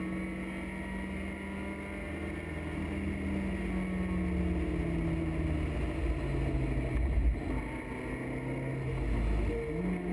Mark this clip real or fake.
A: real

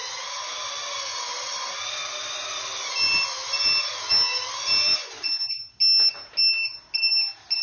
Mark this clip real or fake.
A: real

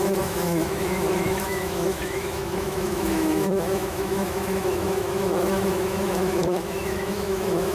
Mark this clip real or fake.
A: fake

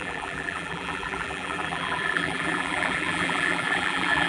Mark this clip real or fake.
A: fake